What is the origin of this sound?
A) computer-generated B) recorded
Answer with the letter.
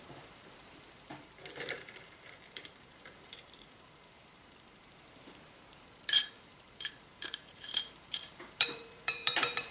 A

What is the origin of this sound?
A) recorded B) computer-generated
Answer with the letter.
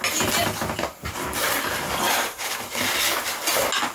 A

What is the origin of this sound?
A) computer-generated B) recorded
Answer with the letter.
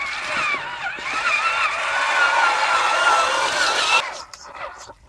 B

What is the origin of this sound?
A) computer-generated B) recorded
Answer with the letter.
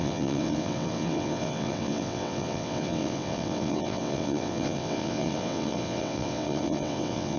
A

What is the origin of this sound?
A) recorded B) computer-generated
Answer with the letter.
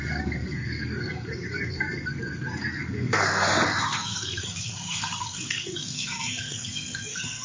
B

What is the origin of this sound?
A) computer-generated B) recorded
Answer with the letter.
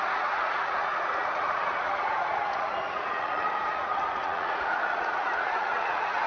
A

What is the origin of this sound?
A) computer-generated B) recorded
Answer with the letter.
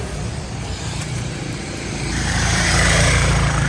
A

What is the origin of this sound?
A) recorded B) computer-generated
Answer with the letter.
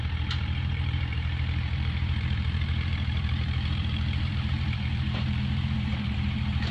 B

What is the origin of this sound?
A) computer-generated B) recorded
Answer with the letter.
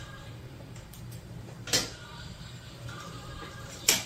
A